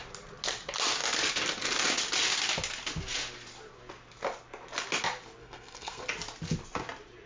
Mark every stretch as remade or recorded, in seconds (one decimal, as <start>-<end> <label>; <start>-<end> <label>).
0.0-5.4 recorded; 5.4-6.0 remade; 6.0-7.3 recorded